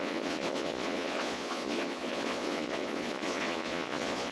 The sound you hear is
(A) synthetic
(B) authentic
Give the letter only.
A